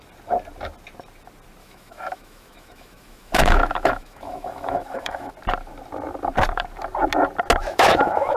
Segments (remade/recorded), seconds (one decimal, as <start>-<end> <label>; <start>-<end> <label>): 0.0-1.6 recorded; 1.6-5.3 remade; 5.3-7.6 recorded; 7.6-8.4 remade